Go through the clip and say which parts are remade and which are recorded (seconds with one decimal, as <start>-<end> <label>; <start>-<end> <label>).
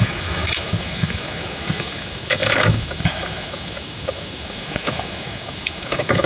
0.0-6.3 remade